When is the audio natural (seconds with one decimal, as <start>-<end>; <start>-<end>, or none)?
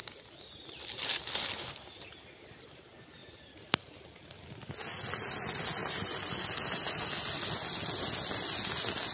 1.2-5.8; 7.0-9.1